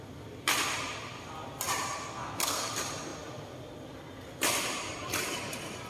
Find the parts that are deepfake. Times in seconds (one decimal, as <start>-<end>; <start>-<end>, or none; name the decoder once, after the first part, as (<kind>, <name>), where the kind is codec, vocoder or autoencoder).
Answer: 2.1-2.7 (codec, SNAC)